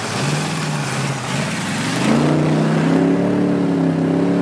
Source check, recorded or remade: recorded